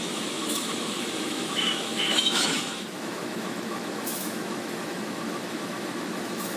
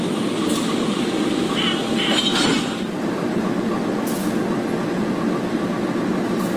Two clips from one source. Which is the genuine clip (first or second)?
second